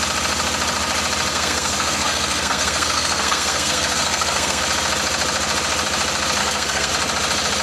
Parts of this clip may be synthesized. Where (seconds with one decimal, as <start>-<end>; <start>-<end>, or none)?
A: 1.3-4.6; 6.4-6.9